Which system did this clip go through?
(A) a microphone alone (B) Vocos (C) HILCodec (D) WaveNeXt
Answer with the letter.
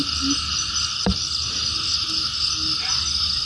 A